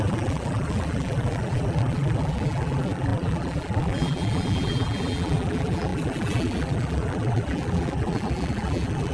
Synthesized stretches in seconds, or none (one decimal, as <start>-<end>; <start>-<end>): 0.0-9.1